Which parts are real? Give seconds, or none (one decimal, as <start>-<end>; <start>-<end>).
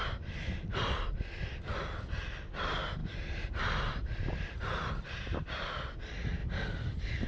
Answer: 0.0-3.0; 4.9-7.3